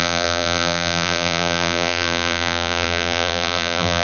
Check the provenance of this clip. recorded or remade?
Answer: remade